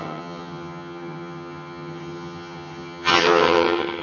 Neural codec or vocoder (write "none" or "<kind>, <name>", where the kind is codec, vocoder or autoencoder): vocoder, HiFi-GAN